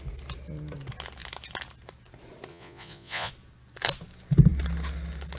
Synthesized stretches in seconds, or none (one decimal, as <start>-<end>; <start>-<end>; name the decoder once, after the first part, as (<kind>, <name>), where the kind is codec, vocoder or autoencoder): 2.5-3.3 (vocoder, Vocos)